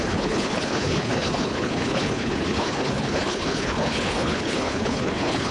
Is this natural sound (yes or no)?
no